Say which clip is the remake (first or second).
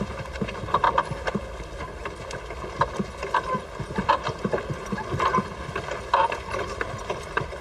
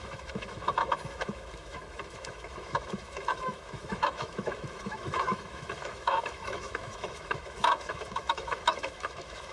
second